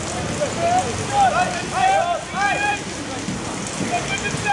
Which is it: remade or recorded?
recorded